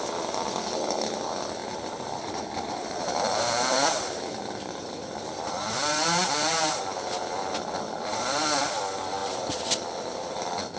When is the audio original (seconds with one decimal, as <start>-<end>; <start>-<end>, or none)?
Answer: 0.0-1.6; 6.8-10.8